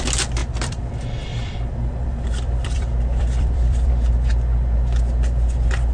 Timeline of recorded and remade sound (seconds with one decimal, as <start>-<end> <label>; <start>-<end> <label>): 0.0-0.4 recorded; 0.4-0.9 remade; 0.9-1.3 recorded; 1.3-3.9 remade; 3.9-5.9 recorded